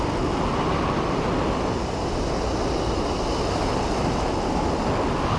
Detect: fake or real real